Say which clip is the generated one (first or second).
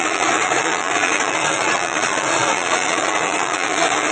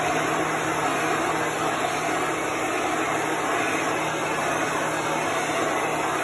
first